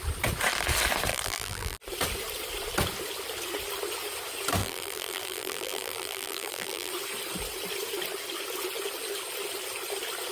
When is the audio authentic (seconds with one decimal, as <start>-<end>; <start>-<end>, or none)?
0.0-1.1; 1.8-4.6; 6.9-10.3